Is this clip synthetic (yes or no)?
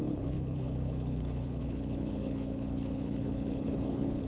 yes